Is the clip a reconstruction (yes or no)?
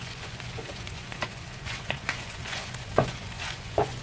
yes